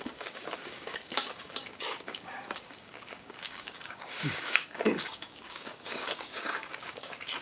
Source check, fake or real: fake